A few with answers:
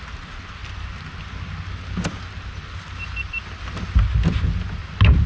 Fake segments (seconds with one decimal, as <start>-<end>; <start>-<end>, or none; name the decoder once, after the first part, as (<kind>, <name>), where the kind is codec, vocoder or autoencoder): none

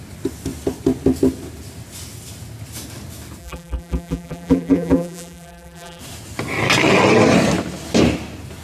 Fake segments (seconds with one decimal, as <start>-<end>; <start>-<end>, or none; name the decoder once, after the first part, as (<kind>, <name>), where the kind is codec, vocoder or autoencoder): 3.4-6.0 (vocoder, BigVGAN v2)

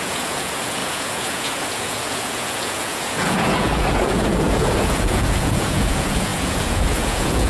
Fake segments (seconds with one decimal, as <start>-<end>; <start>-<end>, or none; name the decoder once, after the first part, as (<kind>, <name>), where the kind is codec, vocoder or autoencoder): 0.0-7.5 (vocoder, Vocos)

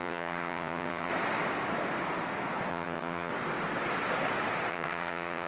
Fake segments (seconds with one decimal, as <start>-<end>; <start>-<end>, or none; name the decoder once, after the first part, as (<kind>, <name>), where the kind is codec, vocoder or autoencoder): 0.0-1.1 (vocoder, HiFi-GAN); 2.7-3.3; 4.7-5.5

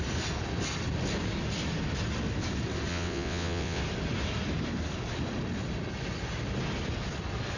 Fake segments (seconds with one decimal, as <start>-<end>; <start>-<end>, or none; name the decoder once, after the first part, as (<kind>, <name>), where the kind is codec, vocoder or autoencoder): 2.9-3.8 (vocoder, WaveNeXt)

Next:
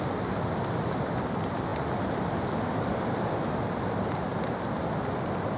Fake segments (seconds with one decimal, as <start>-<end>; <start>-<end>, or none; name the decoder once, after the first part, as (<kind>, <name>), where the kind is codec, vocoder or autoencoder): none

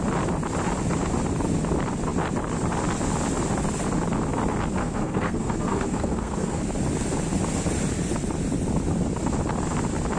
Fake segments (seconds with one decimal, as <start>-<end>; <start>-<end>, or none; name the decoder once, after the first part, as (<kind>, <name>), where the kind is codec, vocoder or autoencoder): 4.8-6.6 (codec, SNAC)

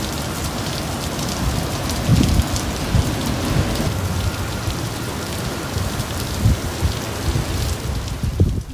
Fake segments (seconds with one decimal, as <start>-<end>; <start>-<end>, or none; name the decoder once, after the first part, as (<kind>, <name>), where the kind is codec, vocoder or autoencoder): 2.1-6.6 (vocoder, BigVGAN v2)